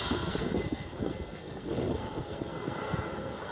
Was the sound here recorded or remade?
remade